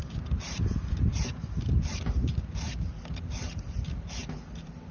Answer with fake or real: real